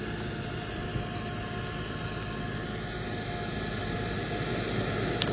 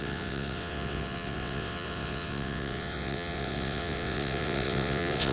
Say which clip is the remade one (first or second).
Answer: second